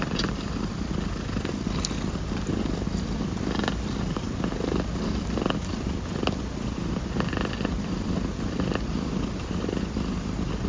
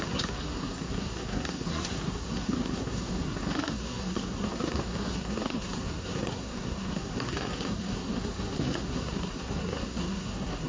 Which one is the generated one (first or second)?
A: second